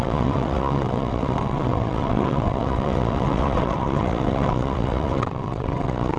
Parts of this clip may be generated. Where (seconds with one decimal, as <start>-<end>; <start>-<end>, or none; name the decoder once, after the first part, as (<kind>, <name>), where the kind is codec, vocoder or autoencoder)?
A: 0.0-6.2 (vocoder, WaveNeXt)